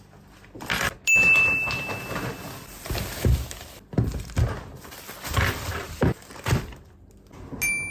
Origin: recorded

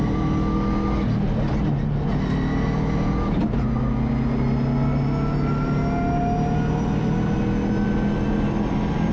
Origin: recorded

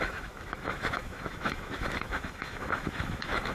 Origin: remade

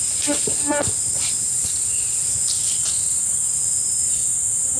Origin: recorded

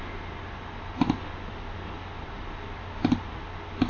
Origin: recorded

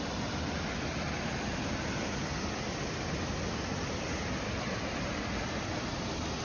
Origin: recorded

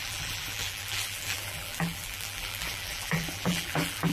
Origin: remade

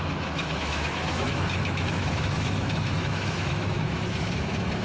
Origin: remade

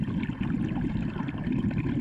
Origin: recorded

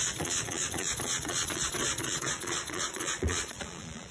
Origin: remade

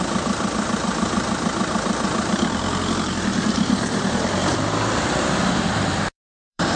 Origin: remade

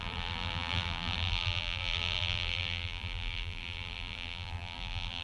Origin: remade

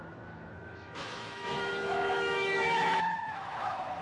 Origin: remade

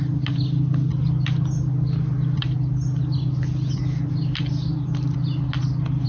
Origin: recorded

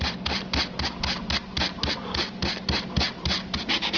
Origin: recorded